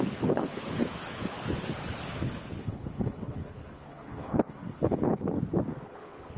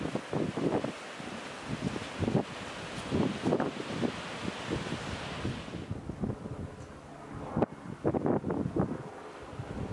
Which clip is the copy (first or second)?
first